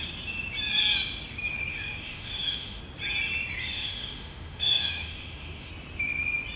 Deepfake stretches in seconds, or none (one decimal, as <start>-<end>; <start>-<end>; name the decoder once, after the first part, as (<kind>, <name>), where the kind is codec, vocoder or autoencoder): 1.7-2.8 (autoencoder, DAC-VAE); 3.6-5.7